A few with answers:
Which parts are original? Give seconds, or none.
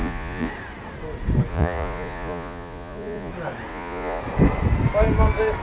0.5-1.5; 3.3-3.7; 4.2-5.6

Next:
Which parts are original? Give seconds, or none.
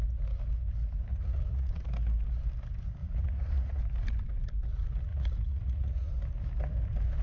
0.0-1.1; 1.8-3.0; 3.8-5.1; 6.1-7.2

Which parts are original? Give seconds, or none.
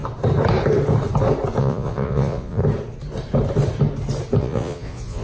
0.0-1.6; 2.6-4.4